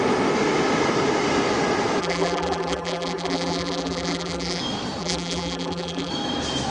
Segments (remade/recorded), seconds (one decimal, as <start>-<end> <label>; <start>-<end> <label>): 0.0-2.0 recorded; 2.0-4.6 remade; 4.6-5.0 recorded; 5.0-6.1 remade; 6.1-6.7 recorded